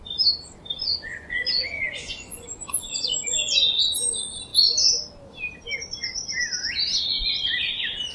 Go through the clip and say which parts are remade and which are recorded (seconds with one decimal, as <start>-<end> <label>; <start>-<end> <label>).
0.0-0.8 recorded; 0.8-3.8 remade; 3.8-8.1 recorded